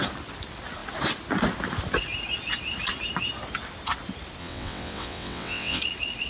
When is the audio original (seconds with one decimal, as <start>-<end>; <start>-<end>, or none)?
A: 0.0-4.4; 5.8-6.3